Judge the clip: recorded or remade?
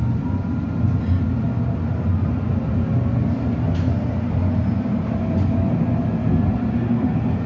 recorded